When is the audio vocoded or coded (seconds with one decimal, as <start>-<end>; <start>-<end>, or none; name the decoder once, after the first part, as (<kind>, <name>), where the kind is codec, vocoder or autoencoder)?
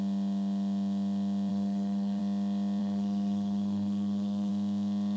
1.5-2.2 (codec, SNAC); 2.8-4.5